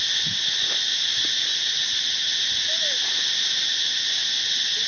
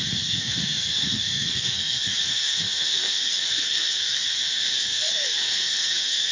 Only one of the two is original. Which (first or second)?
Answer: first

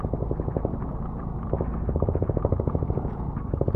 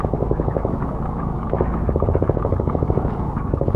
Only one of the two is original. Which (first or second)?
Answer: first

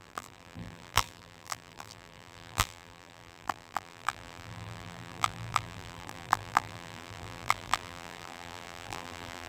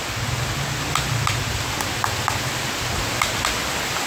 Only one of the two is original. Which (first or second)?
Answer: second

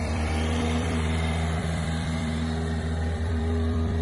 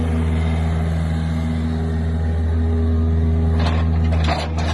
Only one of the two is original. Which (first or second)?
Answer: second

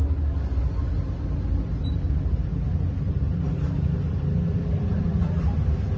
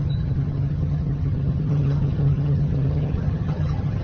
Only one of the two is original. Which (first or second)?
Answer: first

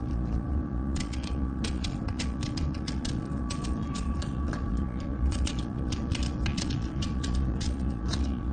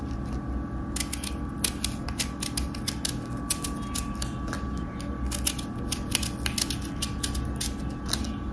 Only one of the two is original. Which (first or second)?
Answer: second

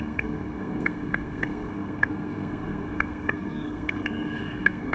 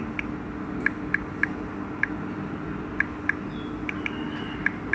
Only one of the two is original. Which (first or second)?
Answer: second